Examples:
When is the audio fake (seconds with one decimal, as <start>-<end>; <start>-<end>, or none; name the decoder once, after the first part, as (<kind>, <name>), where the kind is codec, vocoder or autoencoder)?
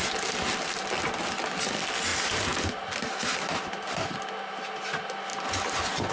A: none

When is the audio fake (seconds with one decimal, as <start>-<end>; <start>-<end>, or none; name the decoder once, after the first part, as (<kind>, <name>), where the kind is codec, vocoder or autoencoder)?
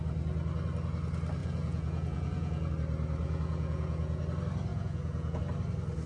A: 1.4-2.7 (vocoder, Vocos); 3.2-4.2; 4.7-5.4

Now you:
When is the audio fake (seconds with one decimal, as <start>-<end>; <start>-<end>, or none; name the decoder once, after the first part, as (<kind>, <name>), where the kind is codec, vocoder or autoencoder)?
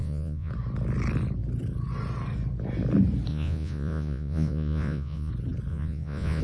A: 0.0-0.5 (vocoder, Vocos); 3.3-5.3; 5.7-6.4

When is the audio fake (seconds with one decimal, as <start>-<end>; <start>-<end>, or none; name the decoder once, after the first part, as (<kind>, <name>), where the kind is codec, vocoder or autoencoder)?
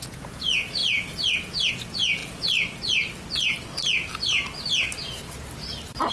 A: 0.0-0.8 (vocoder, Vocos); 1.7-2.2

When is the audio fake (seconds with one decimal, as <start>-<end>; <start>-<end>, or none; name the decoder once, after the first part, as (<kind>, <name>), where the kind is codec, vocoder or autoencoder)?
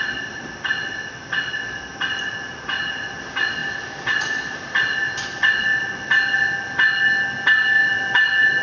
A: none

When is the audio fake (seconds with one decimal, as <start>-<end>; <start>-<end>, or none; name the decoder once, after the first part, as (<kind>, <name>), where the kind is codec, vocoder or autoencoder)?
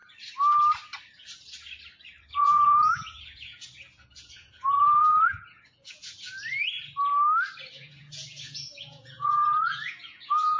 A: 2.3-6.3 (vocoder, Vocos); 7.7-10.6